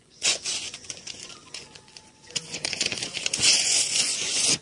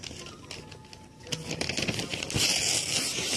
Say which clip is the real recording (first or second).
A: second